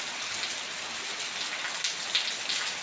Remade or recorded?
recorded